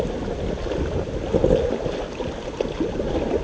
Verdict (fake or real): real